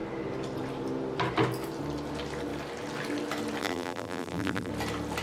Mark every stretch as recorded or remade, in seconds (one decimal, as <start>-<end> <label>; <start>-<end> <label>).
0.0-3.6 recorded; 3.6-4.7 remade; 4.7-5.2 recorded